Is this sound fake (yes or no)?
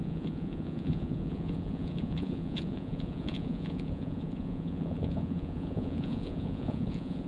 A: yes